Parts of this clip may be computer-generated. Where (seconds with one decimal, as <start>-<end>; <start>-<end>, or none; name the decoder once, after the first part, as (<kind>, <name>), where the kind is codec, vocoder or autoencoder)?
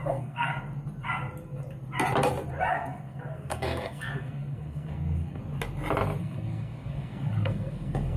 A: 0.0-0.5 (codec, SNAC); 2.7-5.4; 6.2-8.2